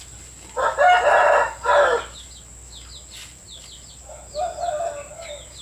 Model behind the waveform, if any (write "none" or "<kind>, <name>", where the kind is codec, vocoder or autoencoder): none